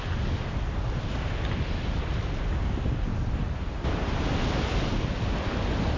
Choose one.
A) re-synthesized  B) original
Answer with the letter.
B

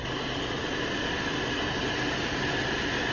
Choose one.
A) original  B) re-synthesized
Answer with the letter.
A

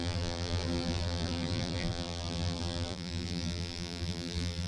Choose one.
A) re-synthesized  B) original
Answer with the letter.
A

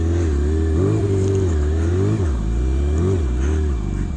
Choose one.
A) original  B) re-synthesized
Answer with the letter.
A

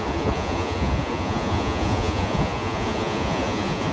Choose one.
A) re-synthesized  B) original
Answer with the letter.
A